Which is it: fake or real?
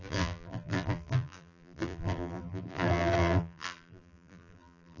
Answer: fake